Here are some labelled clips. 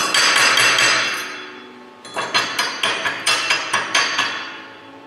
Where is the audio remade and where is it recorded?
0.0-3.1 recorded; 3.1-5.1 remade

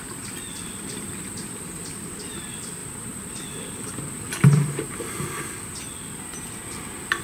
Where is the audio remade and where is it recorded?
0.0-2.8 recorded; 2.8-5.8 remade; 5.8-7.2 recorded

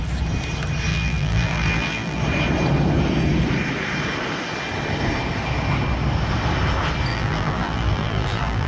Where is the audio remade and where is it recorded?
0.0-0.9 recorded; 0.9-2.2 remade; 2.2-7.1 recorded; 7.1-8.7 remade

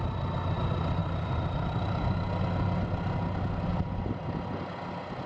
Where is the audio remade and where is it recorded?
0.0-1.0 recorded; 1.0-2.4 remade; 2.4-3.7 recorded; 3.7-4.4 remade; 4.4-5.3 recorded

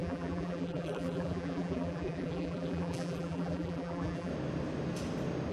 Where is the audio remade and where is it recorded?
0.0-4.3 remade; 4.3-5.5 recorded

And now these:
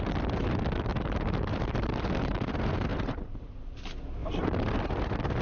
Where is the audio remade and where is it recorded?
0.0-0.9 recorded; 0.9-2.5 remade; 2.5-2.9 recorded; 2.9-3.5 remade; 3.5-4.2 recorded; 4.2-4.8 remade; 4.8-5.4 recorded